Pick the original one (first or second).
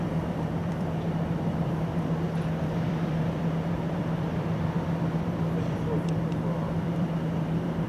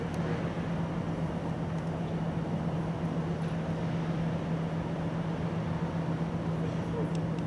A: second